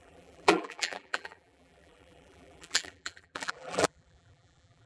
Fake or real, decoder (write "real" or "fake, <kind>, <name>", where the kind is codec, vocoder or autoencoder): fake, vocoder, BigVGAN v2